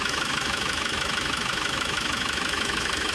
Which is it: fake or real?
fake